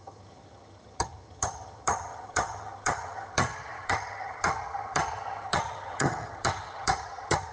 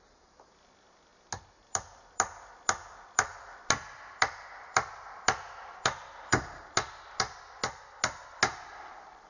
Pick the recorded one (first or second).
second